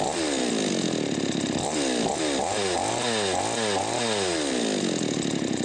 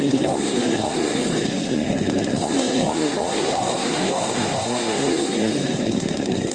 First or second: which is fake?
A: second